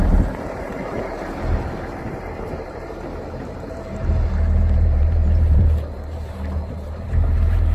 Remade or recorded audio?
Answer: remade